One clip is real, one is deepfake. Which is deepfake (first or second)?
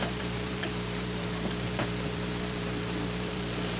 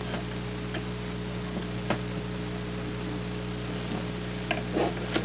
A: first